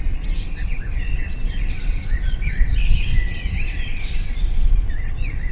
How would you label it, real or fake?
fake